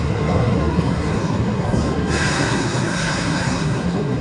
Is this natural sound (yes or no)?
no